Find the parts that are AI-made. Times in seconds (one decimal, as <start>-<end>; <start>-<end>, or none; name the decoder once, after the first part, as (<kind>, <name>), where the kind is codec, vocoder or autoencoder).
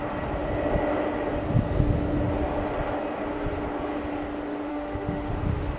4.7-5.3 (autoencoder, DAC-VAE)